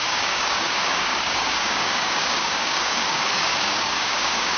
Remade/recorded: remade